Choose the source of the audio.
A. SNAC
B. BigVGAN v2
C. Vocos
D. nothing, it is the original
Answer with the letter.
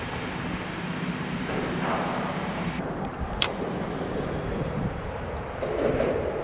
B